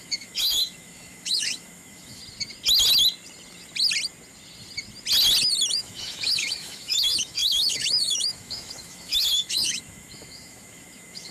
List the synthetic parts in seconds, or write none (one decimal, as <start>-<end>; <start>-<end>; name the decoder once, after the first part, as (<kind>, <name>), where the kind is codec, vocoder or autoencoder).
0.0-2.2 (autoencoder, DAC-VAE); 5.7-11.3